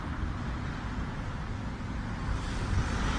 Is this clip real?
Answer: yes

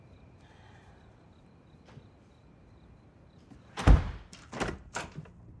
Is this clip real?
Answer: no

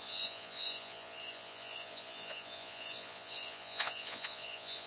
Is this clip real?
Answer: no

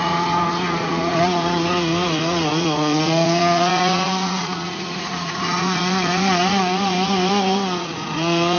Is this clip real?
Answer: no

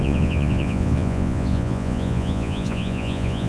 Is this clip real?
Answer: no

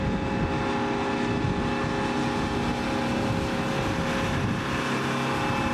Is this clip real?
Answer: yes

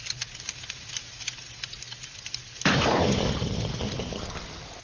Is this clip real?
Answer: yes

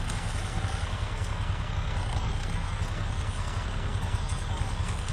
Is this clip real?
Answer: no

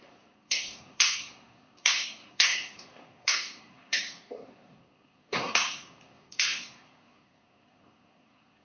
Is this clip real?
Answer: no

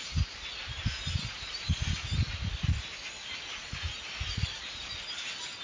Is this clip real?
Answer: yes